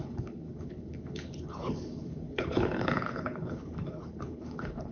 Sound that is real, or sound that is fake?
fake